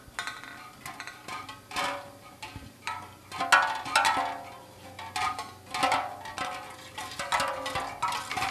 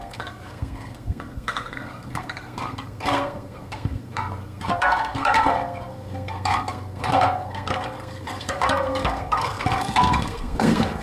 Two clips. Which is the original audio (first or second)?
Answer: first